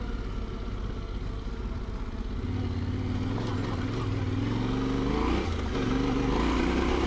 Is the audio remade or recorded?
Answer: recorded